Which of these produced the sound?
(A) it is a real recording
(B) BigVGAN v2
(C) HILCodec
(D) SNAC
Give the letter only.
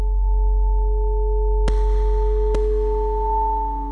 A